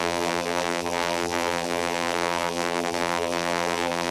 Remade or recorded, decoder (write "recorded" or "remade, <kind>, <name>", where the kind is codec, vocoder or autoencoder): remade, vocoder, BigVGAN v2